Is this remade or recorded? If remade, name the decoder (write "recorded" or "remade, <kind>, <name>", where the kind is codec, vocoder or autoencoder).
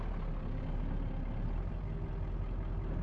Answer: recorded